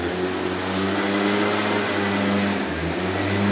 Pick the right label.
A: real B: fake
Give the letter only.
A